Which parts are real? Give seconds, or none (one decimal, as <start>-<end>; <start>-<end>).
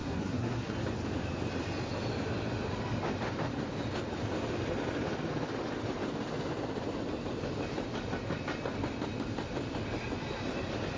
0.7-11.0